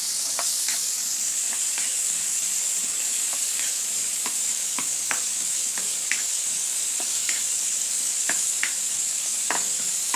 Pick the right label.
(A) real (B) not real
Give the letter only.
B